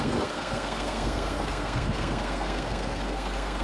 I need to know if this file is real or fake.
fake